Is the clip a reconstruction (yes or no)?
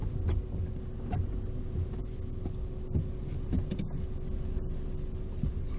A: no